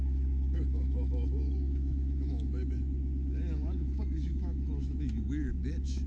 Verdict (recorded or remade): remade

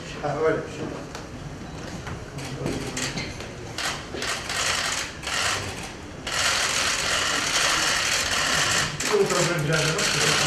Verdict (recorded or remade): recorded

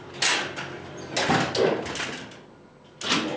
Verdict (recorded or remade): recorded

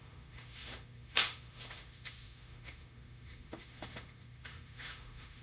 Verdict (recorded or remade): remade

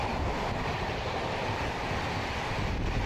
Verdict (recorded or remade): recorded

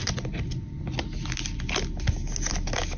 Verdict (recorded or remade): recorded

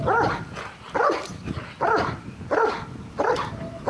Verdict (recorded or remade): recorded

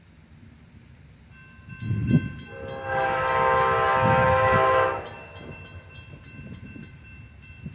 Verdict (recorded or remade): recorded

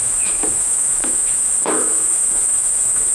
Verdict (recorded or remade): remade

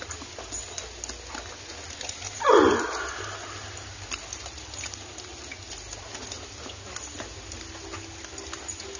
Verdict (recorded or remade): recorded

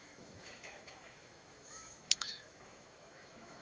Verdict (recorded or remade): remade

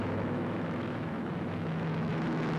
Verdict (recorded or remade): remade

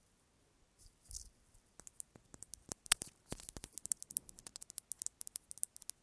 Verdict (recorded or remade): recorded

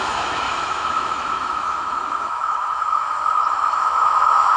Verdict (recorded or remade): remade